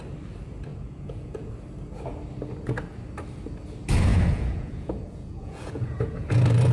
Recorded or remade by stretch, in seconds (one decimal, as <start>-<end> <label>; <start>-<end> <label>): 0.0-0.7 recorded; 0.7-1.5 remade; 1.5-4.1 recorded; 4.1-6.3 remade; 6.3-6.7 recorded

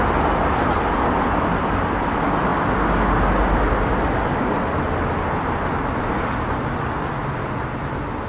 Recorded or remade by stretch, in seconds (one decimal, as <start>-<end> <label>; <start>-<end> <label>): 0.0-8.3 recorded

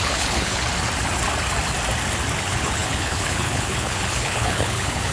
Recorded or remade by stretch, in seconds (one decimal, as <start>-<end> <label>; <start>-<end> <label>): 0.0-0.6 remade; 0.6-2.4 recorded; 2.4-5.1 remade